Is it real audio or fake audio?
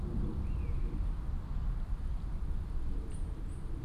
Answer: real